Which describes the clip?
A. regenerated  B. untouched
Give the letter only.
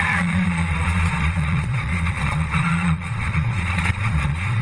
A